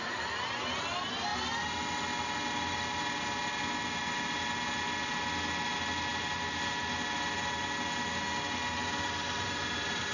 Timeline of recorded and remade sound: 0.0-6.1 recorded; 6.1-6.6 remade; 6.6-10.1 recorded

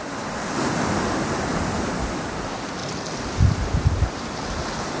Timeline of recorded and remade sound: 0.0-5.0 recorded